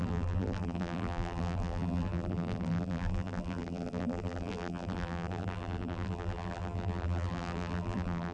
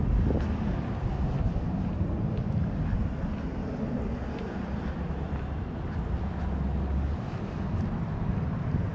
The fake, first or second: first